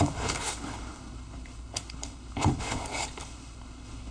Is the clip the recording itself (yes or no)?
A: no